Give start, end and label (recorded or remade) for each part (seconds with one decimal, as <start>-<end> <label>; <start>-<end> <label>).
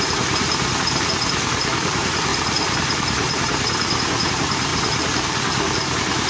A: 0.0-6.3 remade